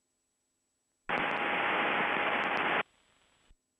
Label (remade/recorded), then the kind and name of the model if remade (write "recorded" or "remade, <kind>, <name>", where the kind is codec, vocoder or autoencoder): recorded